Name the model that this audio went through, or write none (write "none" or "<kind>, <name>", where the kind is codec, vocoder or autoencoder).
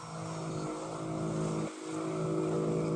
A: none